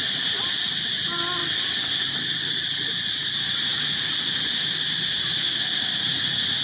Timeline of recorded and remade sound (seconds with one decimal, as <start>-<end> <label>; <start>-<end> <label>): 0.0-6.6 recorded